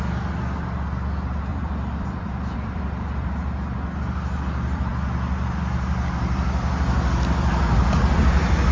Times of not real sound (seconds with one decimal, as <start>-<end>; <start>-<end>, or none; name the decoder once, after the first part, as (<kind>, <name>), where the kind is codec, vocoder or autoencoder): 1.5-3.3 (vocoder, BigVGAN v2)